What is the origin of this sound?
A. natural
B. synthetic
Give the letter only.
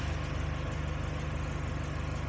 A